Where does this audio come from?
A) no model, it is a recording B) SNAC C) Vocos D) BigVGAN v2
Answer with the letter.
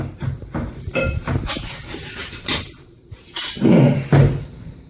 D